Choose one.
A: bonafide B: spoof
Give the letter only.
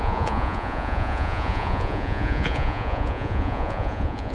B